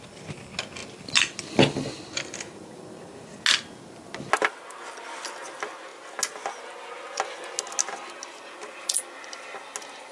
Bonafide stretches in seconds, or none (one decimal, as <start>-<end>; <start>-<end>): 0.0-10.1